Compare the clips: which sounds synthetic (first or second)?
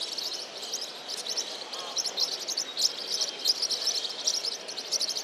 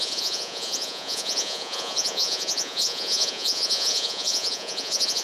second